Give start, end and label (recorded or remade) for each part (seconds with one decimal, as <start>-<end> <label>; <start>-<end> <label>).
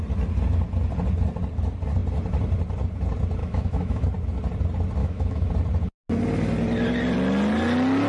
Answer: 0.0-3.4 recorded; 3.4-4.0 remade; 4.0-5.0 recorded; 5.0-5.5 remade; 5.5-8.1 recorded